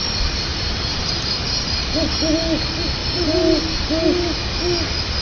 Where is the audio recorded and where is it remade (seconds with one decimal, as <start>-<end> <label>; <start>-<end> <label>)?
0.0-0.5 recorded; 0.5-2.2 remade; 2.2-3.0 recorded; 3.0-3.6 remade; 3.6-5.2 recorded

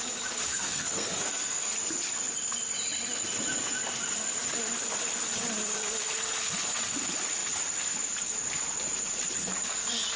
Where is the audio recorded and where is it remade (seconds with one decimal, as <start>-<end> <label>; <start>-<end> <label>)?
0.0-0.5 recorded; 0.5-1.7 remade; 1.7-10.2 recorded

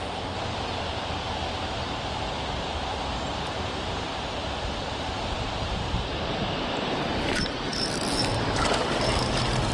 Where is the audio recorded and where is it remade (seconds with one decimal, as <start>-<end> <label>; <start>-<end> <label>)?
0.0-2.7 recorded; 2.7-7.7 remade; 7.7-9.7 recorded

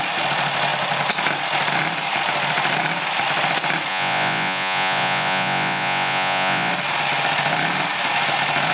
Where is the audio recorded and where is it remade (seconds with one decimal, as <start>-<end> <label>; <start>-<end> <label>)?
0.0-3.9 recorded; 3.9-6.7 remade; 6.7-8.7 recorded